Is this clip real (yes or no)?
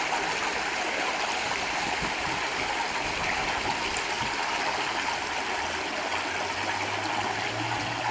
yes